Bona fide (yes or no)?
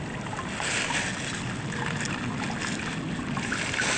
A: yes